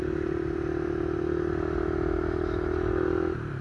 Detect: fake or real real